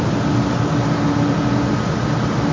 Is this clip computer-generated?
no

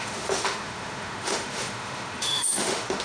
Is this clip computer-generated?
yes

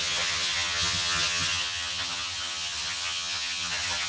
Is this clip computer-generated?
yes